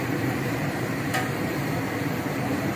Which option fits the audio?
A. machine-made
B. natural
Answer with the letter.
A